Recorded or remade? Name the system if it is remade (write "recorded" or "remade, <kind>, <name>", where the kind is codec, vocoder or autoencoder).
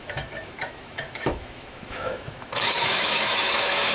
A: remade, autoencoder, DAC-VAE